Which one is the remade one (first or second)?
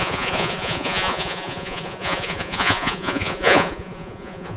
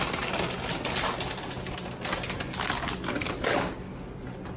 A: first